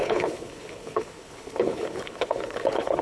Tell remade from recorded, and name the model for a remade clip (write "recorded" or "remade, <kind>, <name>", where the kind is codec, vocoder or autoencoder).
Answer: remade, codec, HILCodec